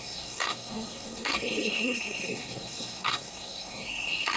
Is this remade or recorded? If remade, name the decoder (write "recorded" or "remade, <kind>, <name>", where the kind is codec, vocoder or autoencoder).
remade, codec, SNAC